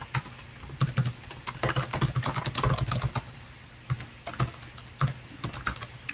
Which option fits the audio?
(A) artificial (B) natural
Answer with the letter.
B